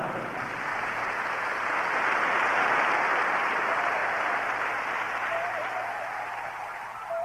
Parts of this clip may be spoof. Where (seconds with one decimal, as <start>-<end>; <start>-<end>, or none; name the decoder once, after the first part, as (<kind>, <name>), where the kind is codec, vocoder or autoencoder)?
0.7-1.4 (vocoder, Vocos)

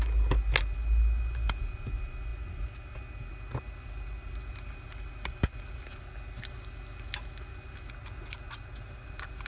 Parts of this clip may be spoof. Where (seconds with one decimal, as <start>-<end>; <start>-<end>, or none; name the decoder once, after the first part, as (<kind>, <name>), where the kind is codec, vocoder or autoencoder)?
none